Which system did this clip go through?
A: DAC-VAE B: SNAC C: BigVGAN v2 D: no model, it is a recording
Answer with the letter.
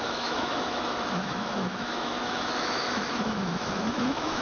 A